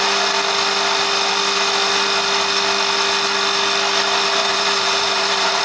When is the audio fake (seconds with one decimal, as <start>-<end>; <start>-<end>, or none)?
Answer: 4.4-5.6